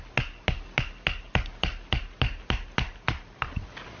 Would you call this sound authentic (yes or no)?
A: yes